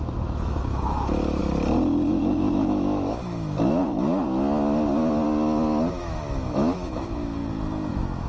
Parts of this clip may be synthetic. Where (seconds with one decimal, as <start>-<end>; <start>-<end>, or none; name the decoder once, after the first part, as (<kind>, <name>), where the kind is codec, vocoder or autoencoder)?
0.0-1.4 (autoencoder, DAC-VAE); 2.1-3.8; 5.9-7.4; 7.9-8.3